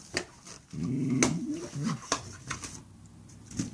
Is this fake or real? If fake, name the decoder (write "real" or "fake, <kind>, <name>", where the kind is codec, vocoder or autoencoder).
real